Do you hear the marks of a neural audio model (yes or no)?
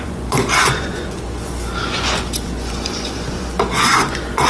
yes